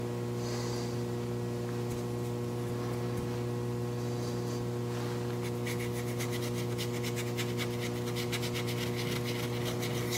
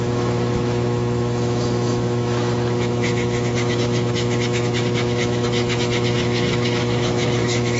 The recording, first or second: first